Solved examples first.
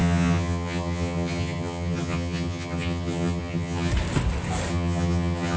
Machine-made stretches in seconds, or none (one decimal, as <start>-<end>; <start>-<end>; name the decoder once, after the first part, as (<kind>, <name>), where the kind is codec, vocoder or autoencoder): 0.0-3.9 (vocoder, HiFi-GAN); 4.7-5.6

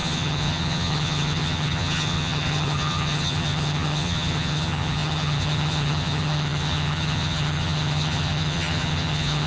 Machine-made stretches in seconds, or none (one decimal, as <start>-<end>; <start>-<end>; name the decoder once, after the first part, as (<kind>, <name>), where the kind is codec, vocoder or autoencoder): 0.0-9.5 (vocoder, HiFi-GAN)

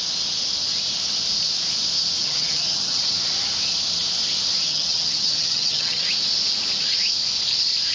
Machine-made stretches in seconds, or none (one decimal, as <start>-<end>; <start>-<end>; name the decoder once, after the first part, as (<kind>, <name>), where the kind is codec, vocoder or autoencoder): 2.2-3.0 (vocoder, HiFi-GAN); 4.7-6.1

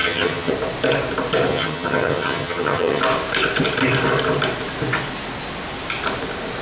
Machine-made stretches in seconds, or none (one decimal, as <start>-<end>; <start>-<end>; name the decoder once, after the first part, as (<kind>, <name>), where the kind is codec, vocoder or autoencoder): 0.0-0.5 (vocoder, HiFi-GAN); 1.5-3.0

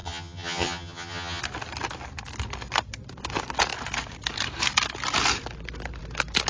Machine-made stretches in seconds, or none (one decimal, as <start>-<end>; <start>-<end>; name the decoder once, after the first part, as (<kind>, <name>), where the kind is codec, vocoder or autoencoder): 0.0-1.4 (vocoder, HiFi-GAN)